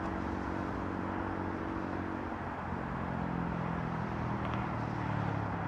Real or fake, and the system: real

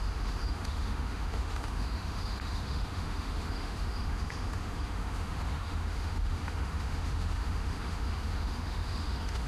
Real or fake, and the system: fake, autoencoder, DAC-VAE